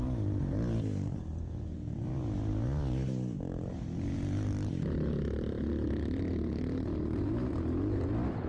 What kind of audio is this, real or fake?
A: real